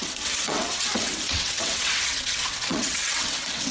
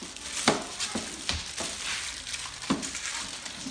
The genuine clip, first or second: second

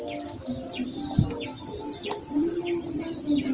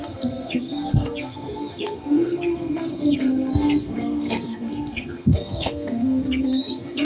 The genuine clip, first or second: first